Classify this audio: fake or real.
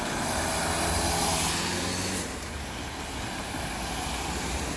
real